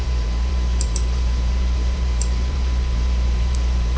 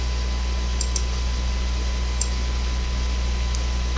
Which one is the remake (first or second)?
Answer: first